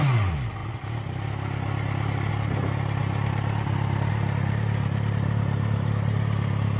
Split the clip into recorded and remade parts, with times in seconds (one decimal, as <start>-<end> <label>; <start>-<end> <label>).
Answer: 0.0-6.8 recorded